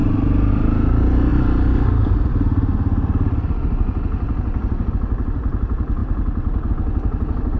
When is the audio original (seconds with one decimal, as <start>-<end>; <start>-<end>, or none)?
0.5-6.0; 6.7-7.6